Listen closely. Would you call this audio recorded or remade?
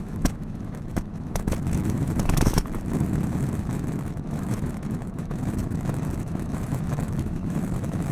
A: remade